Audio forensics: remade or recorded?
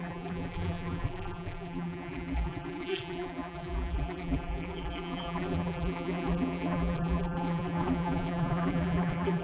remade